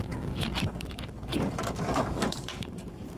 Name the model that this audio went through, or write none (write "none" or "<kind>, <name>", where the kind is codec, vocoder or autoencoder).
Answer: codec, DAC